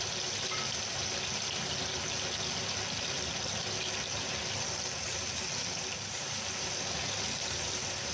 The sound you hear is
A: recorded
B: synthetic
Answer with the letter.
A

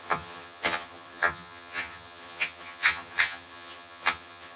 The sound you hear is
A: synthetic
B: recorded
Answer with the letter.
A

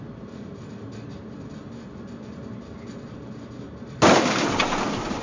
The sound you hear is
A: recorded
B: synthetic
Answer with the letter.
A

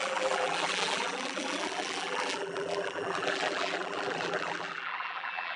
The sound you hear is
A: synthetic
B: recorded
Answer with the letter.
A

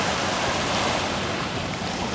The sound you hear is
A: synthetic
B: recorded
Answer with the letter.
B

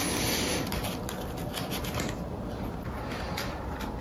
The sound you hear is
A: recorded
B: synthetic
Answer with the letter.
A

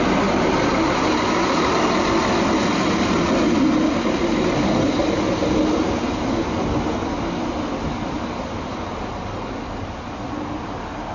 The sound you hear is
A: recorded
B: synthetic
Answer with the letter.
A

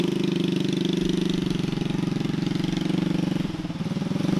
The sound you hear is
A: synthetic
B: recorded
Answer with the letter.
B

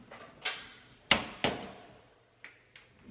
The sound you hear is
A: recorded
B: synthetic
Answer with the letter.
A